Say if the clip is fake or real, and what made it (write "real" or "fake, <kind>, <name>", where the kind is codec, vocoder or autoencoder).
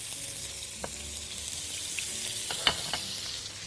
real